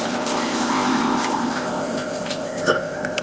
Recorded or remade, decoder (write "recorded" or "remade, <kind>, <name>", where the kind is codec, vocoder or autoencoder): remade, codec, ZipCodec